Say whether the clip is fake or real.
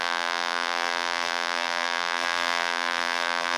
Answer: fake